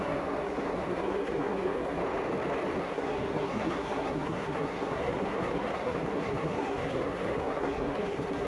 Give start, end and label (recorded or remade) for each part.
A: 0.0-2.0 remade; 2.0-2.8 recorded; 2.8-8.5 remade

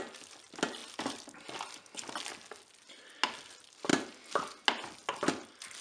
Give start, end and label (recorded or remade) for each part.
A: 0.0-5.8 recorded

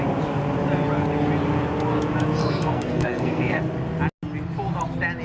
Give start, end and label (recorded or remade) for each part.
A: 0.0-2.4 recorded; 2.4-3.6 remade; 3.6-5.2 recorded